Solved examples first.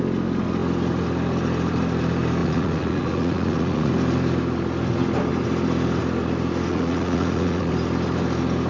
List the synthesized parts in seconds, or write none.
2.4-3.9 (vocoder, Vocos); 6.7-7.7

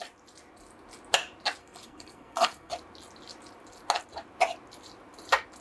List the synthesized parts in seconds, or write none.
1.6-2.7 (codec, SNAC)

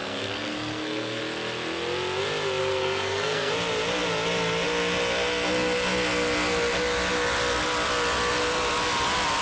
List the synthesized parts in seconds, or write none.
0.0-1.2 (codec, SNAC); 2.6-3.5